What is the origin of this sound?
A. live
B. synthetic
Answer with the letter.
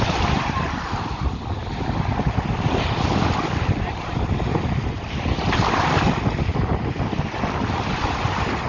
A